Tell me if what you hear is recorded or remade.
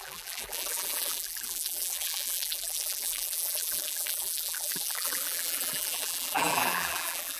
remade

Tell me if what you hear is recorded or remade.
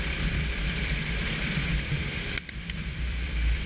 remade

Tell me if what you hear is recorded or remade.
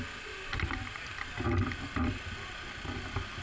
recorded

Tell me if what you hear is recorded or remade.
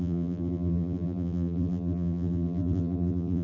remade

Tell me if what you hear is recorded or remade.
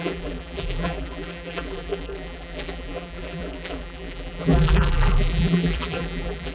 remade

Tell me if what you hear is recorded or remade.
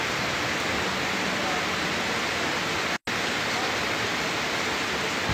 recorded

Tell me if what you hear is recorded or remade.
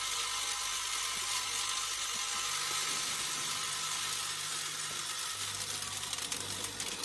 recorded